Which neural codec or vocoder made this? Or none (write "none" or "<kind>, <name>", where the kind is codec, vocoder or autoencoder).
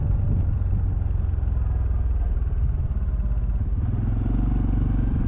none